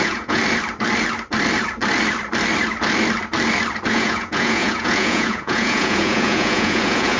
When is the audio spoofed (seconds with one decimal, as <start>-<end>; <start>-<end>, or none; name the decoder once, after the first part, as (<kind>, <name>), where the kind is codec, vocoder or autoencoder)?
0.0-0.4 (vocoder, Vocos); 3.9-7.2